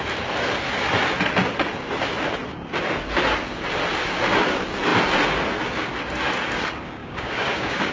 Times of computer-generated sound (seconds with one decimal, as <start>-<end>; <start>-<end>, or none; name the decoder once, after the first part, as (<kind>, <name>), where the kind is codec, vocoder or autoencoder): 7.0-7.9 (codec, DAC)